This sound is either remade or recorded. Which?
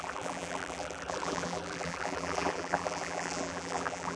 remade